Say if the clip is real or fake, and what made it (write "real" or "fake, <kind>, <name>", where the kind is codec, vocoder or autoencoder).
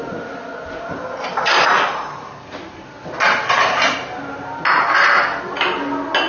real